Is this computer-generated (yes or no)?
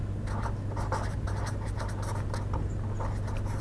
no